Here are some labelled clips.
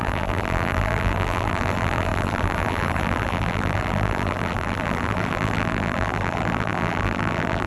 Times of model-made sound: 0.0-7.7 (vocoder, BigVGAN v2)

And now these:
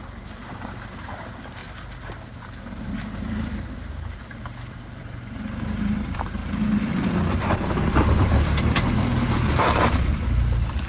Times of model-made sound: 0.0-6.4 (vocoder, BigVGAN v2); 8.2-10.9

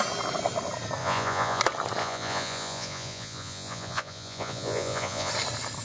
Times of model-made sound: 1.0-1.6 (vocoder, Vocos); 2.0-5.3

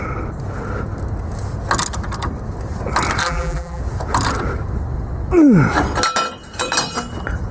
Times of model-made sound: 3.2-3.8 (vocoder, BigVGAN v2)

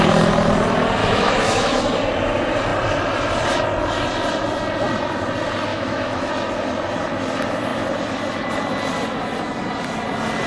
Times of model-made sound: 1.0-1.8 (autoencoder, DAC-VAE); 5.7-6.3